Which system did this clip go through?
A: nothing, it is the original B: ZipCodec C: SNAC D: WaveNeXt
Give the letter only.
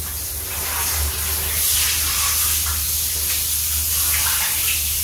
A